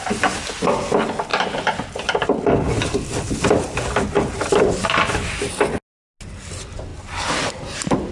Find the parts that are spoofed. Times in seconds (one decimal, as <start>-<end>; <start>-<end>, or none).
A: 1.3-5.5